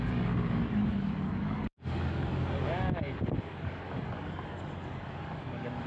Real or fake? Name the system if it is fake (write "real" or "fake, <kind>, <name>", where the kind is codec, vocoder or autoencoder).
fake, codec, DAC